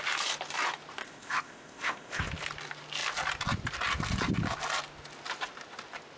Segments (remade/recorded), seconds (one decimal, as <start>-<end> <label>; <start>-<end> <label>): 0.0-1.0 recorded; 1.0-2.3 remade; 2.3-6.2 recorded